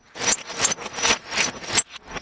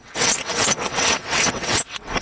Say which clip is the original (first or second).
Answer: first